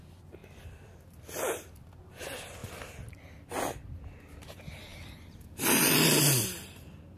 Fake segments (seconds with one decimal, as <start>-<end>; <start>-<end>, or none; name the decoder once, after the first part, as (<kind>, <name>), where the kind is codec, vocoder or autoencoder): none